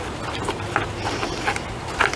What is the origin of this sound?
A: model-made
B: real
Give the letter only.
B